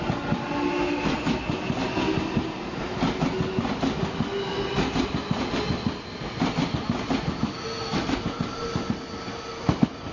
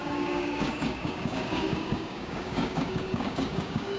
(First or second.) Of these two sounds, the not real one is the second